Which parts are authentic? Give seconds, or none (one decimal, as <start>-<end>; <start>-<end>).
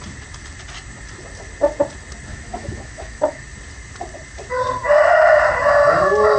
0.0-2.3; 3.4-6.4